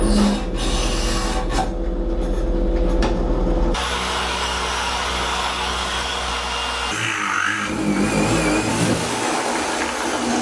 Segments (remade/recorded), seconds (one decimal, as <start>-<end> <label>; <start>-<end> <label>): 0.0-3.8 recorded; 3.8-6.3 remade; 6.3-8.7 recorded; 8.7-9.5 remade; 9.5-10.4 recorded